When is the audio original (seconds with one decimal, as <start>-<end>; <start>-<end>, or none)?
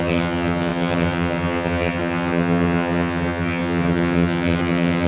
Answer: none